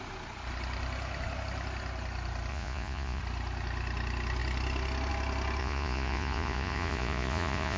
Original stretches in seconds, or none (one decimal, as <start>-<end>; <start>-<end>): 0.0-2.5; 3.2-5.6